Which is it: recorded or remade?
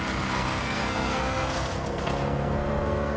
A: remade